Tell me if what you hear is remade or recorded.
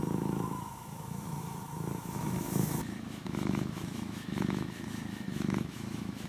remade